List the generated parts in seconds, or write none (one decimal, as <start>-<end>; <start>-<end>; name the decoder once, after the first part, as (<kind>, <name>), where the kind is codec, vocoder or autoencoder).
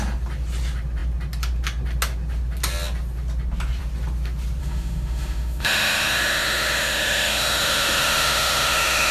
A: 4.6-9.1 (autoencoder, DAC-VAE)